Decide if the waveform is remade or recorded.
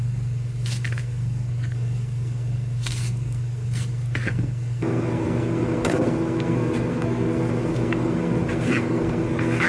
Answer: remade